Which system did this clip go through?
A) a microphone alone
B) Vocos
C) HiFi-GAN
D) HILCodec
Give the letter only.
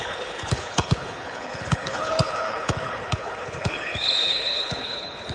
D